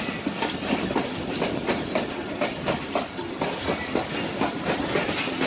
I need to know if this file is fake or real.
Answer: real